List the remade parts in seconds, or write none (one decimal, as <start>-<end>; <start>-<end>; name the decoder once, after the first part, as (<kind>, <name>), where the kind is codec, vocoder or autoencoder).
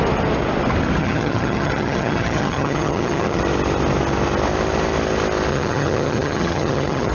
1.0-3.4 (vocoder, HiFi-GAN); 5.5-7.1